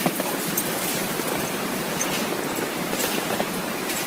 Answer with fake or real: fake